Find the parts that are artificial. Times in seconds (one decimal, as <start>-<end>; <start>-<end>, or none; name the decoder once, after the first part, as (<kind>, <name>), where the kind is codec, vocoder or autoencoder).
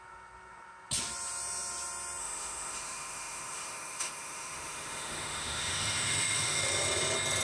2.2-6.6 (autoencoder, DAC-VAE)